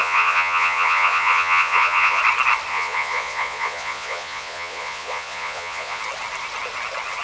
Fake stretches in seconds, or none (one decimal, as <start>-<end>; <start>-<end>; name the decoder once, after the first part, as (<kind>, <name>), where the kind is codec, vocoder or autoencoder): 0.0-2.2 (vocoder, Vocos); 2.7-6.0

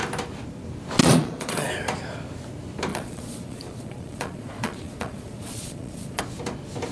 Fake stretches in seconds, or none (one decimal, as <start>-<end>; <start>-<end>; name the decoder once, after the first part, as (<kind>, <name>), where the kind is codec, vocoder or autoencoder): 1.0-1.7 (vocoder, Vocos); 2.9-6.2

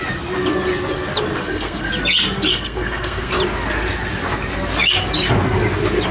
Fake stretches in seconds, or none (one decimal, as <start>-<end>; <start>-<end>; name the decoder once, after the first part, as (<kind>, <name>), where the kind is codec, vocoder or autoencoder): 1.4-1.9 (codec, SNAC); 2.5-3.3

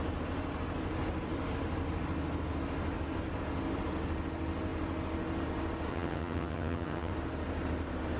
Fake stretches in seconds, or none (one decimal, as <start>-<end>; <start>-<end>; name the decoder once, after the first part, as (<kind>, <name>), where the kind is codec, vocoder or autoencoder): 5.9-7.1 (vocoder, HiFi-GAN)

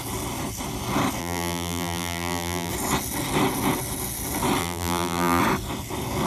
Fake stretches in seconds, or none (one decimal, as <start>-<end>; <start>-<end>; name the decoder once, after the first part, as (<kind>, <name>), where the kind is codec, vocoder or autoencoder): 1.2-2.7 (vocoder, BigVGAN v2); 4.6-5.4